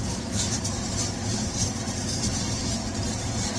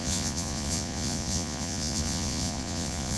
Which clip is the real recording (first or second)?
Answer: first